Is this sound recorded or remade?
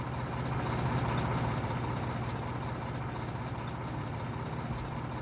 recorded